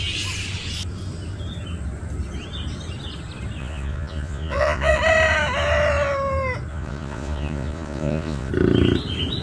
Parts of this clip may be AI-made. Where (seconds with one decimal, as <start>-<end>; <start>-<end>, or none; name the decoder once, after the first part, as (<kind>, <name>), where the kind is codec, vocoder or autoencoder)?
3.6-5.0 (vocoder, Vocos); 6.7-8.5